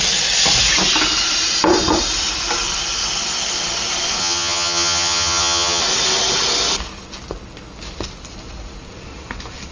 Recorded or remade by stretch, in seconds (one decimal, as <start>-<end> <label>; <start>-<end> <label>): 0.0-4.2 recorded; 4.2-5.8 remade; 5.8-9.7 recorded